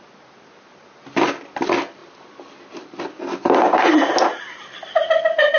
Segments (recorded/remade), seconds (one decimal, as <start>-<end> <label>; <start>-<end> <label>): 0.0-5.6 recorded